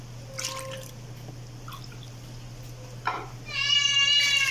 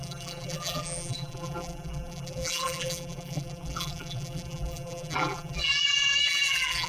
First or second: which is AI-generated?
second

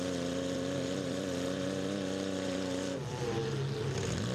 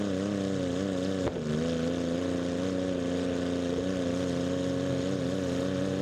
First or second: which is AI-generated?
first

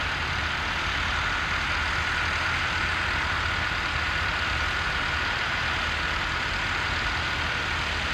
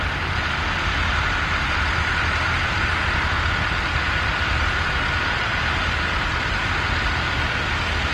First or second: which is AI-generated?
second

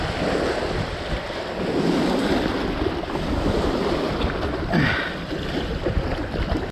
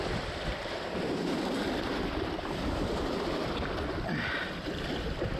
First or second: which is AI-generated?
second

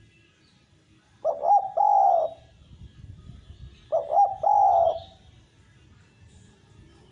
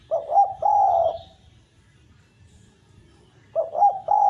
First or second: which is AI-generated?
second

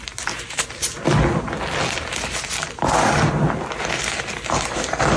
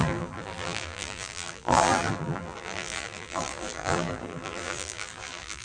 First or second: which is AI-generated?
second